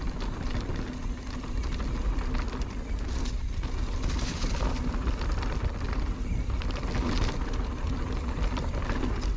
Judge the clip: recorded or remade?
recorded